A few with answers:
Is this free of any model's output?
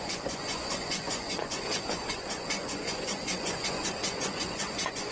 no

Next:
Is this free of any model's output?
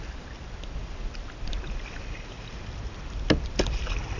yes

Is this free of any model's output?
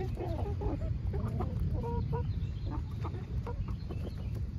no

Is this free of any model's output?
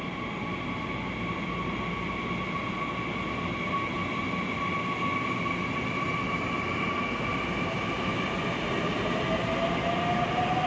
yes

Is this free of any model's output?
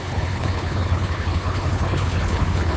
no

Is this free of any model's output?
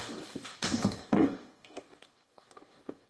no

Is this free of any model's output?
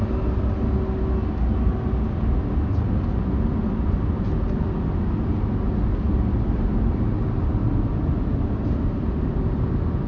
yes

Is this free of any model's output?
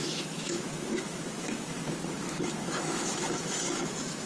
no